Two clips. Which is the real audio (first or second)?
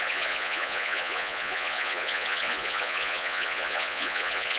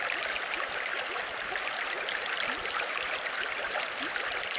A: second